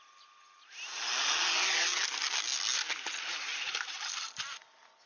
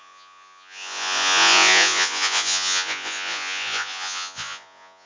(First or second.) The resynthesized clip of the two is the second